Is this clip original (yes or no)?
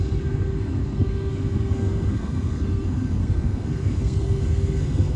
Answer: no